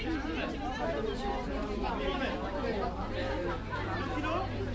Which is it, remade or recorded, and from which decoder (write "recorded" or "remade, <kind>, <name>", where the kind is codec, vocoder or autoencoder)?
recorded